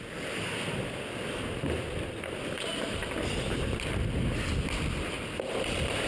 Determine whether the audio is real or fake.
real